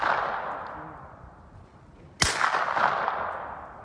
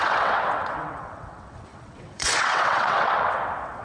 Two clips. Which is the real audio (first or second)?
first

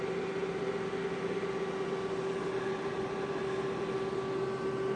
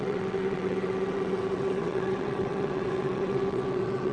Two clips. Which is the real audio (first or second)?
first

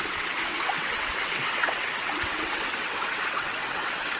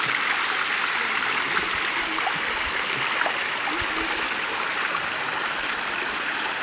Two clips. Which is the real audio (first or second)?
second